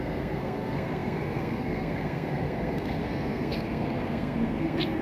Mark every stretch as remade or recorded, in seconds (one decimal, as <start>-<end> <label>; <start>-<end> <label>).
0.0-5.0 remade